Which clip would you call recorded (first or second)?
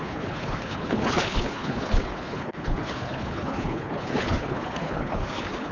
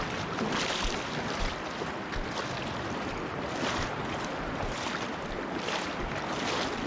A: second